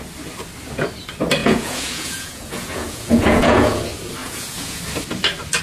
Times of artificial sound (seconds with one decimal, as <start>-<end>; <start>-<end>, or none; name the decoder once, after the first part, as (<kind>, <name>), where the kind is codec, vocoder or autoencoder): 1.4-3.8 (vocoder, Vocos); 4.2-4.8